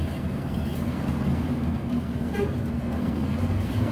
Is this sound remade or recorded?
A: remade